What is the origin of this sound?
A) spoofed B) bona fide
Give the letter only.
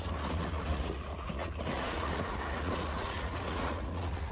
A